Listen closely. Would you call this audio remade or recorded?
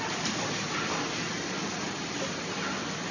recorded